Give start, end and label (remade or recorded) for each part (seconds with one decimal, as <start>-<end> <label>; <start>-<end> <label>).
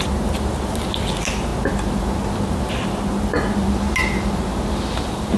0.0-5.4 recorded